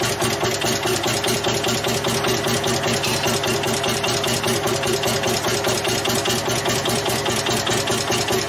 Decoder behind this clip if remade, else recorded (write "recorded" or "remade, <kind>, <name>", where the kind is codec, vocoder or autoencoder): recorded